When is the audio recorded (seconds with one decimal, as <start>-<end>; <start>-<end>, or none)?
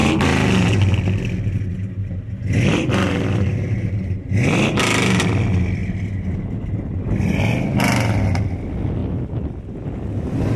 0.0-9.0; 10.1-10.6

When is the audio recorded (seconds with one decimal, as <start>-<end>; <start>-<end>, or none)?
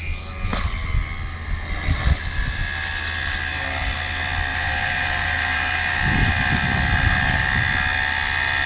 0.0-4.5; 6.3-8.7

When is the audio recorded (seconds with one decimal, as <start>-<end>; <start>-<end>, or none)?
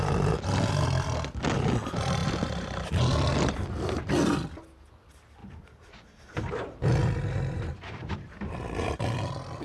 0.0-2.2; 2.9-5.4; 8.1-9.6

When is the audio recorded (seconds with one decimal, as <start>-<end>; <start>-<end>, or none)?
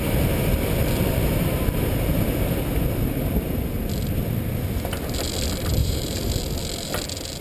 0.0-5.8; 6.3-7.4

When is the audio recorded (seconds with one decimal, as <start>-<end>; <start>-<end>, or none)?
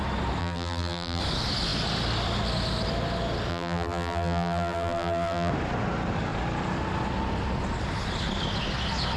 0.0-0.4; 1.2-3.5; 5.5-9.2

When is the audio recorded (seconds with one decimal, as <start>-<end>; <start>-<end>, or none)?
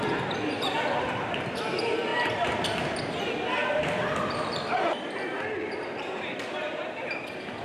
none